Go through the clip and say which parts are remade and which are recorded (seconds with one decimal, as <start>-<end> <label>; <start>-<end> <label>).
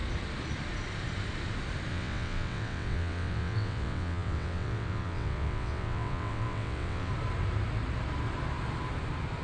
0.0-1.9 recorded; 1.9-7.1 remade; 7.1-9.4 recorded